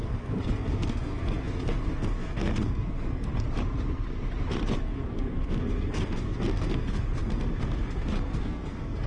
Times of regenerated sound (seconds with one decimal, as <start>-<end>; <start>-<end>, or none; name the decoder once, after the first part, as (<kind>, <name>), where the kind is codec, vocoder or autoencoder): 0.0-3.3 (codec, SNAC); 4.8-9.1